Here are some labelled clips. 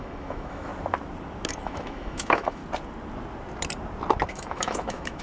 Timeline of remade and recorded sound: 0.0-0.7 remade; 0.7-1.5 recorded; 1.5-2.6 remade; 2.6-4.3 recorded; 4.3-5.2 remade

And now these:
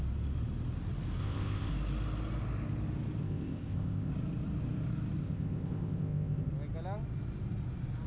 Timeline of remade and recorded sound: 0.0-1.2 recorded; 1.2-1.7 remade; 1.7-3.2 recorded; 3.2-4.1 remade; 4.1-5.2 recorded; 5.2-6.5 remade; 6.5-8.1 recorded

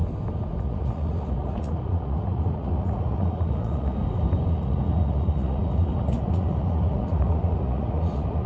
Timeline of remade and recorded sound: 0.0-0.6 recorded; 0.6-4.0 remade; 4.0-4.5 recorded; 4.5-8.5 remade

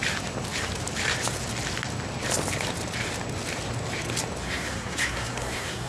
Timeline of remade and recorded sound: 0.0-4.4 recorded; 4.4-5.9 remade

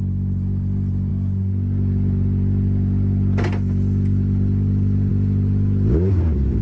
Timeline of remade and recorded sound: 0.0-6.6 recorded

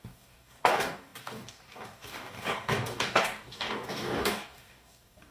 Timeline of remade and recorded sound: 0.0-5.3 remade

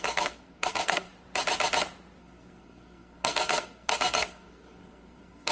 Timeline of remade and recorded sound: 0.0-1.1 remade; 1.1-2.2 recorded; 2.2-5.5 remade